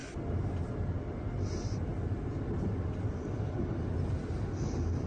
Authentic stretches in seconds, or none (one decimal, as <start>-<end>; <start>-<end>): 0.0-5.1

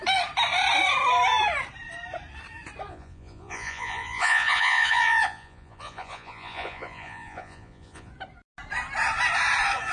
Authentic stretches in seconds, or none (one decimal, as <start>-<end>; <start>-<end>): 0.0-2.9; 8.1-9.9

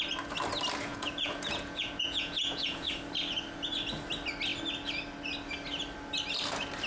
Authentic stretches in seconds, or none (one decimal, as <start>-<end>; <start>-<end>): 0.0-0.9; 2.9-6.9